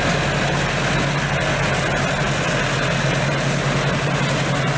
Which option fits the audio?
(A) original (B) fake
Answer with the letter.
A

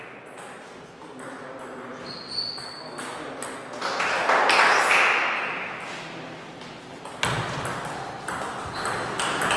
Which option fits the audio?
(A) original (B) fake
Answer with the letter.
A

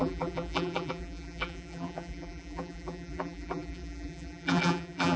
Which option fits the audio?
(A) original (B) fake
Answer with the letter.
B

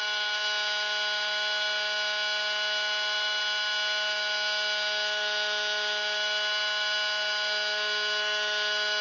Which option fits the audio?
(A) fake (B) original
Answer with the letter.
B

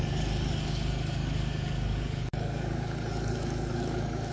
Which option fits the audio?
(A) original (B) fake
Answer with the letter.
B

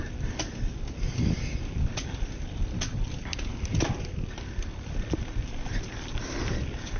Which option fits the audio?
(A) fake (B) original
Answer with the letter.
B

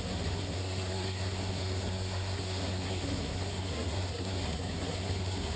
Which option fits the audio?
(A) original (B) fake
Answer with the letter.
B